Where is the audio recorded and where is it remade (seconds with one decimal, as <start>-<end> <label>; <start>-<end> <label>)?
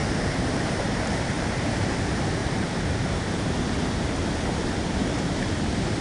0.0-1.9 remade; 1.9-2.4 recorded; 2.4-3.4 remade; 3.4-6.0 recorded